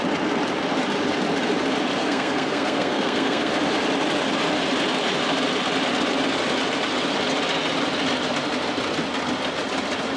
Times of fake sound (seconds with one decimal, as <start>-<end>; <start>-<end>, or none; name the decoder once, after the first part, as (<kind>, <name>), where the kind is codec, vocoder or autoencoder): 2.0-3.5 (codec, SNAC)